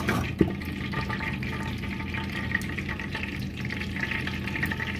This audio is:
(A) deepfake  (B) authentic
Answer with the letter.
B